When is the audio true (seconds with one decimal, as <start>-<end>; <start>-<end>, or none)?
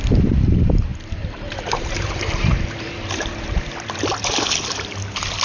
0.0-0.9; 3.7-5.4